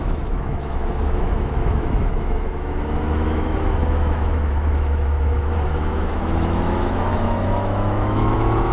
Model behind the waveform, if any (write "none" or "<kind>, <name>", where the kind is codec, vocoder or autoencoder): autoencoder, DAC-VAE